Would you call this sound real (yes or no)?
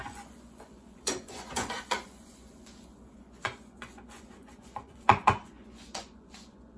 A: no